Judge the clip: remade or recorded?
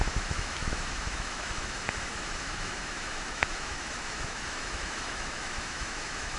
remade